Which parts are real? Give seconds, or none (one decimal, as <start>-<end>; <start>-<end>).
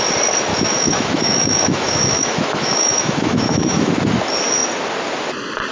0.0-0.5; 3.9-5.7